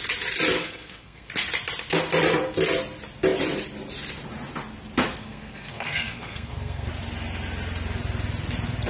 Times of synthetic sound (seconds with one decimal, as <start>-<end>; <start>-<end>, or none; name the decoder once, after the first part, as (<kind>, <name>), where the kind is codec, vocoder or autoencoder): 0.6-1.3 (codec, SNAC); 5.2-6.9